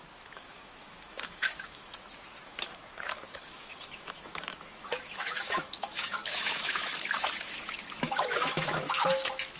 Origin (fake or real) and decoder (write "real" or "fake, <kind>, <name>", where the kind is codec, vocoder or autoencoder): fake, autoencoder, DAC-VAE